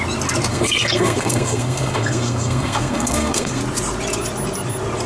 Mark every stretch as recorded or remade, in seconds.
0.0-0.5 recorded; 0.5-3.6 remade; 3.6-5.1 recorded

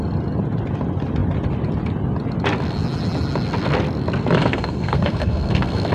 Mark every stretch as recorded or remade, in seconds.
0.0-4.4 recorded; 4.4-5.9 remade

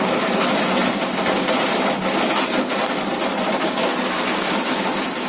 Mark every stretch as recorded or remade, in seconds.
0.0-5.3 recorded